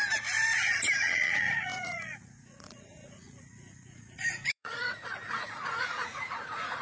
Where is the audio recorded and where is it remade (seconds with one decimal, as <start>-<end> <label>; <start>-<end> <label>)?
0.0-1.0 recorded; 1.0-6.8 remade